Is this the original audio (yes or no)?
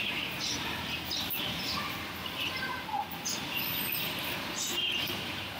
no